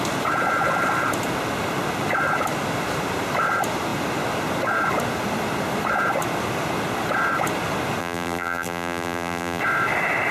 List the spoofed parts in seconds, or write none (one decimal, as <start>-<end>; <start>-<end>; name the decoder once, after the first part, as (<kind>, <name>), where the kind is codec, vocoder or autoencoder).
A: 8.0-9.6 (vocoder, BigVGAN v2)